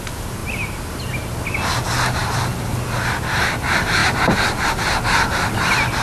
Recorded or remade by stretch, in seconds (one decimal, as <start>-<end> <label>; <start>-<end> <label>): 0.0-2.2 recorded; 2.2-3.1 remade; 3.1-4.0 recorded; 4.0-4.7 remade; 4.7-6.0 recorded